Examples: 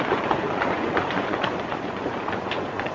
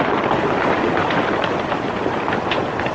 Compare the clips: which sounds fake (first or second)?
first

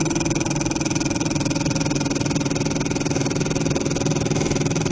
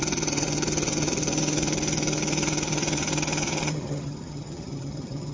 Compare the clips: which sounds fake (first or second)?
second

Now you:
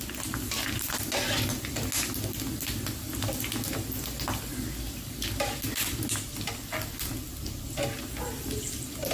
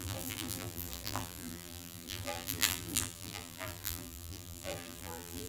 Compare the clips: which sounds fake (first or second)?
second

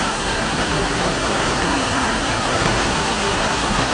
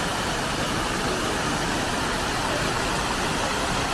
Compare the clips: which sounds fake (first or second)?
first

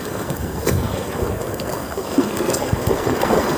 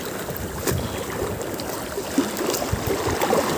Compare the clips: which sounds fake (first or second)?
first